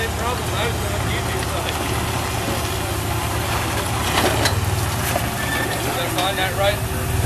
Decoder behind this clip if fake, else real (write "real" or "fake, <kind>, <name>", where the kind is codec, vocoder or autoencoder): real